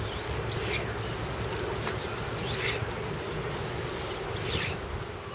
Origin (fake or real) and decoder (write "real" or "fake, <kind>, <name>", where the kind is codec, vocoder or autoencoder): real